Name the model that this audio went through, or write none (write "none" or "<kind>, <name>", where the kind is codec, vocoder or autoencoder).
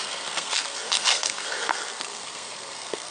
codec, SNAC